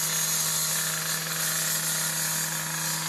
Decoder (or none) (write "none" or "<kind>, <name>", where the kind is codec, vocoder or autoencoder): none